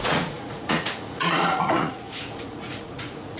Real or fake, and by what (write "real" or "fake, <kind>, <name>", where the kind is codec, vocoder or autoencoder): fake, vocoder, Vocos